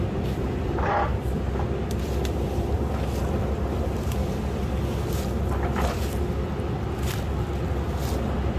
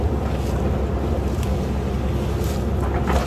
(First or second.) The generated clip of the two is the first